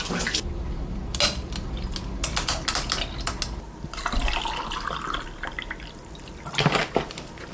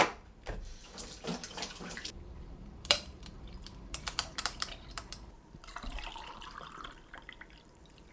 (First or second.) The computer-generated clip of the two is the second